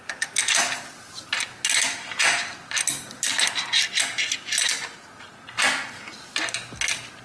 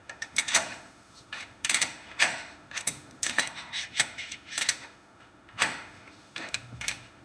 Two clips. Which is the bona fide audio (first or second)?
first